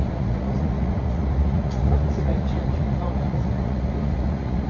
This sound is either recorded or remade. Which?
remade